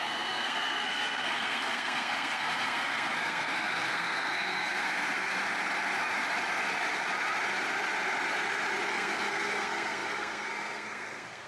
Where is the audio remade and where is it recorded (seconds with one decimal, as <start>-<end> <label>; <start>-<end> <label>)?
0.0-5.3 remade; 5.3-8.9 recorded; 8.9-11.5 remade